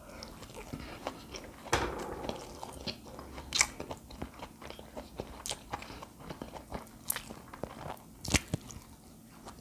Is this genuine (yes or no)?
yes